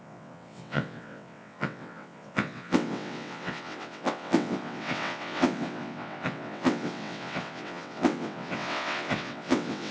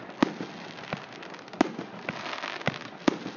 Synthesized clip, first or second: first